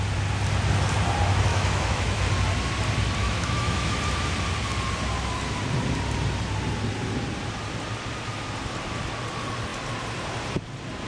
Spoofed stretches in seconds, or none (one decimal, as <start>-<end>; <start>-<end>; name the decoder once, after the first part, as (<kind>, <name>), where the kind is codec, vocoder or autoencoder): 1.5-2.2 (autoencoder, DAC-VAE); 3.2-4.0